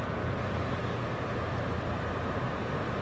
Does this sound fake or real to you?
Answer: fake